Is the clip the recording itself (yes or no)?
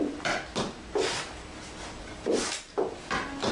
yes